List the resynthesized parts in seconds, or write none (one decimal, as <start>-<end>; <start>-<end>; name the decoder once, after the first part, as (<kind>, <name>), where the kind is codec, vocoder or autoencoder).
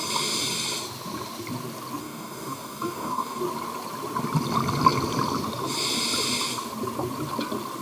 2.0-3.4 (codec, DAC)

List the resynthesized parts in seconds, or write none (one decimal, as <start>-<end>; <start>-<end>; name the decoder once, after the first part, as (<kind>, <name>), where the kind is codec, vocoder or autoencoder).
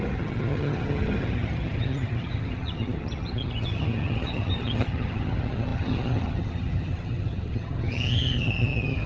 0.0-9.1 (vocoder, HiFi-GAN)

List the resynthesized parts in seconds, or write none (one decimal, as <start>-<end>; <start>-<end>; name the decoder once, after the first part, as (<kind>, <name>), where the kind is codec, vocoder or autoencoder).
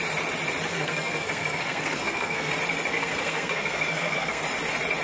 0.7-2.5 (codec, SNAC); 2.9-4.4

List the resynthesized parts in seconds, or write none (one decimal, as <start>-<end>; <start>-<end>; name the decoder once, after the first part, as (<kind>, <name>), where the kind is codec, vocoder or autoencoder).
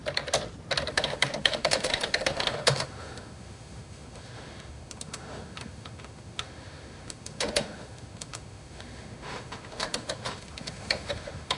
0.9-11.6 (autoencoder, DAC-VAE)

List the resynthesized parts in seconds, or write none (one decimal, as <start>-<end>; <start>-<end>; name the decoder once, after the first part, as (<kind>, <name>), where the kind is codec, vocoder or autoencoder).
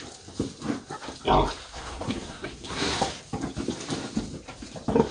1.6-3.2 (codec, SNAC)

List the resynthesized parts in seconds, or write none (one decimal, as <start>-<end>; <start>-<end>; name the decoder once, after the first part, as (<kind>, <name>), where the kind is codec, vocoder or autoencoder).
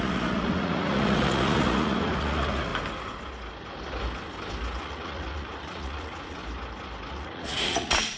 0.0-2.7 (vocoder, Vocos); 4.8-6.4; 7.1-8.2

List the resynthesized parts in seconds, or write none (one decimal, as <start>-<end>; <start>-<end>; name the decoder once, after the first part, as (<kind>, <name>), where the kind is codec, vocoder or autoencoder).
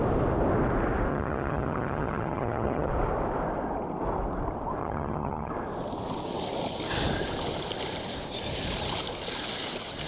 1.1-2.9 (vocoder, HiFi-GAN); 4.8-5.5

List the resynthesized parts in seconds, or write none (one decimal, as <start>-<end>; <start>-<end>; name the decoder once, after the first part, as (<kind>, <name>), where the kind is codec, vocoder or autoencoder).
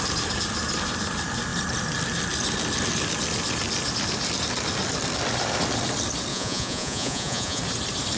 6.3-7.6 (vocoder, Vocos)